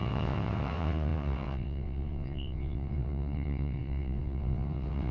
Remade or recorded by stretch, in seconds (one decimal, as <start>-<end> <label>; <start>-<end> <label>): 0.0-5.1 remade